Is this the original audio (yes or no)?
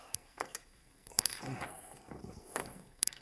no